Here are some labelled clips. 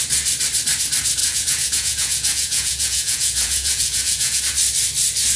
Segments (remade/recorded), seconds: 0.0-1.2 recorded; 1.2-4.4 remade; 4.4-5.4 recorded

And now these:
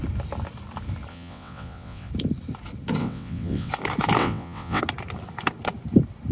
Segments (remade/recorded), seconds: 0.0-1.1 recorded; 1.1-2.1 remade; 2.1-3.0 recorded; 3.0-3.7 remade; 3.7-4.2 recorded; 4.2-4.8 remade; 4.8-6.3 recorded

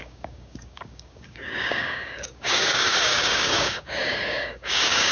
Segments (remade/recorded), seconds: 0.0-5.1 remade

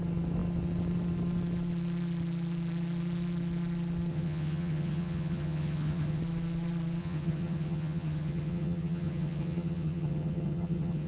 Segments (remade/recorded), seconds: 0.0-4.1 recorded; 4.1-6.2 remade; 6.2-7.0 recorded; 7.0-11.1 remade

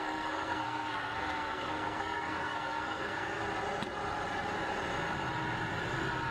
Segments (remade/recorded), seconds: 0.0-3.4 remade; 3.4-6.3 recorded

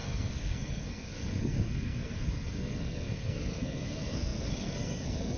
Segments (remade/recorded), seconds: 0.0-5.4 remade

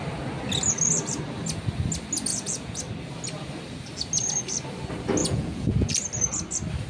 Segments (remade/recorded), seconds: 0.0-2.3 recorded; 2.3-2.8 remade; 2.8-5.2 recorded; 5.2-5.9 remade; 5.9-6.9 recorded

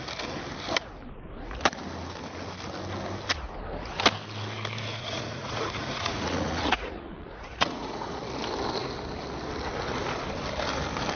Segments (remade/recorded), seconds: 0.0-4.9 recorded; 4.9-8.2 remade; 8.2-11.2 recorded